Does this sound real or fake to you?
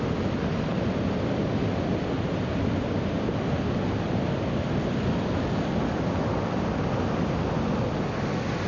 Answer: real